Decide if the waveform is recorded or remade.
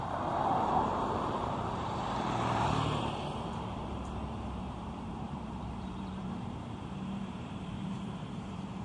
remade